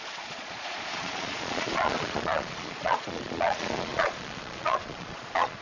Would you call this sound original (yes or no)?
no